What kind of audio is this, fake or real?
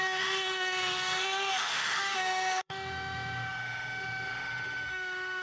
fake